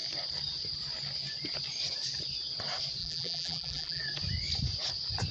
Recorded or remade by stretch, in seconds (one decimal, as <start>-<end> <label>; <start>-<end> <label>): 0.0-3.0 recorded; 3.0-4.0 remade; 4.0-5.3 recorded